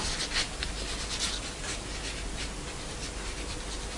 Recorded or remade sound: recorded